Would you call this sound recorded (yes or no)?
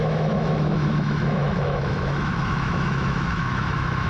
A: no